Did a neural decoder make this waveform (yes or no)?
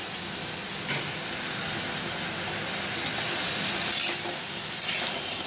no